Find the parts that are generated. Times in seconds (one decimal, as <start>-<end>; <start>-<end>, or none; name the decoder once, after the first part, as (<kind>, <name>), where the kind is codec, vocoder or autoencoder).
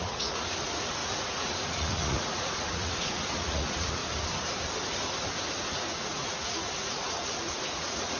0.0-4.0 (vocoder, Vocos); 5.5-8.2